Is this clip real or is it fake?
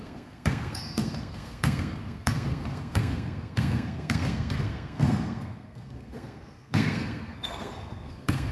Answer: fake